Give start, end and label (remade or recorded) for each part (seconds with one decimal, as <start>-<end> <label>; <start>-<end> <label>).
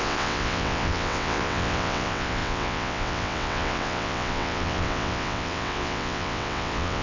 0.0-7.0 remade